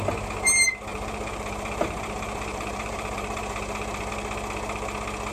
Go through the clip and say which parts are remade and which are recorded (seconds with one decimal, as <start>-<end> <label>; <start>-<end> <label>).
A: 0.0-0.9 recorded; 0.9-4.1 remade; 4.1-5.3 recorded